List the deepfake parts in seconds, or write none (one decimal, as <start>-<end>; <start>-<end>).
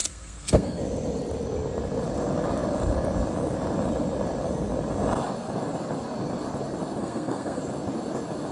0.0-0.8; 7.0-7.6